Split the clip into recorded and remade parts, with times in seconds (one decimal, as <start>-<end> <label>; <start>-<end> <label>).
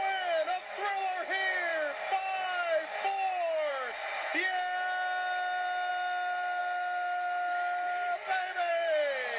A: 0.0-9.4 recorded